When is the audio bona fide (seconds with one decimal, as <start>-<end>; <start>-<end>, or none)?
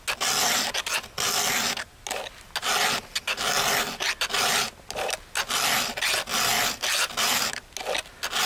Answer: 0.0-8.5